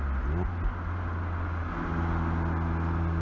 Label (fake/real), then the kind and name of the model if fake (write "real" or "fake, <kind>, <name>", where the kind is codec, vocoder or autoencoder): real